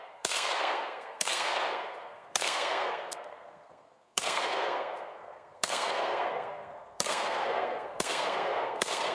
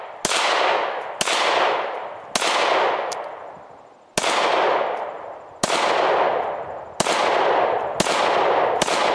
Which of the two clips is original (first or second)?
second